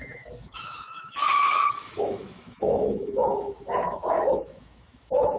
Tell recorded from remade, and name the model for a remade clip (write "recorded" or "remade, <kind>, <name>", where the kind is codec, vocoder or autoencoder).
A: remade, autoencoder, DAC-VAE